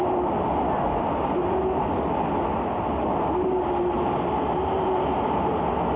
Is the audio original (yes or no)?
yes